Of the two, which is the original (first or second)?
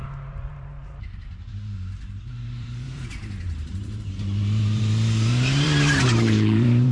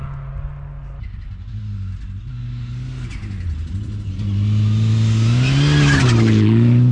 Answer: second